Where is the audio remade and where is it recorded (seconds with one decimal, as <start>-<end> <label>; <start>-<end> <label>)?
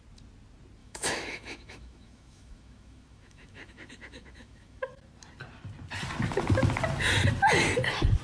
0.0-0.8 recorded; 0.8-5.0 remade; 5.0-8.2 recorded